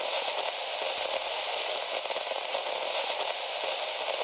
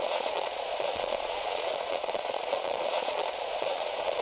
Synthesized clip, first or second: second